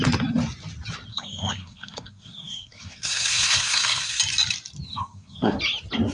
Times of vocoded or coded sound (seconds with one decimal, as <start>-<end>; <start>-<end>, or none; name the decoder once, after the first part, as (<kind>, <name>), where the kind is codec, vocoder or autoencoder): 1.1-4.2 (codec, SNAC); 4.9-5.6